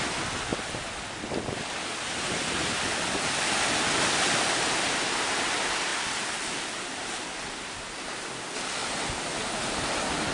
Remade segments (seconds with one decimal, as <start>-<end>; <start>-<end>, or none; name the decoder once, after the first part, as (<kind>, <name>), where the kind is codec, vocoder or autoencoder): 5.9-7.3 (vocoder, BigVGAN v2)